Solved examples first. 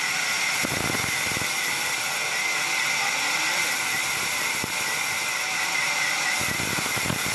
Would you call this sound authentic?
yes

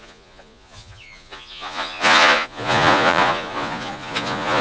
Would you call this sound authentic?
no